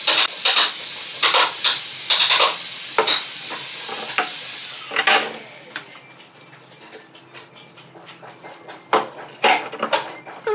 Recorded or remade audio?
recorded